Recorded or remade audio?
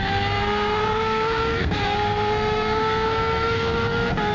remade